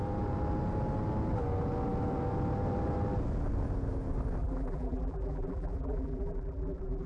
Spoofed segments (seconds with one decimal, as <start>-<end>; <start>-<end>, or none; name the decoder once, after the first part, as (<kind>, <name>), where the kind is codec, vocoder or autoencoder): 4.4-7.1 (vocoder, BigVGAN v2)